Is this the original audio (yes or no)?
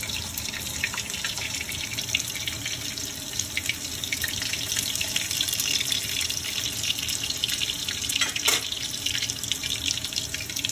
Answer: no